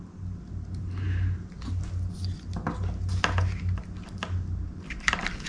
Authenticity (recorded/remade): recorded